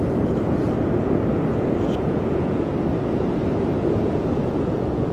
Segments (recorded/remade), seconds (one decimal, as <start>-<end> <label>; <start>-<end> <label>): 0.0-0.6 remade; 0.6-1.5 recorded; 1.5-2.7 remade; 2.7-3.8 recorded; 3.8-5.1 remade